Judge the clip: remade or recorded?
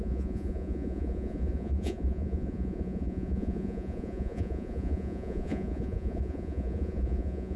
remade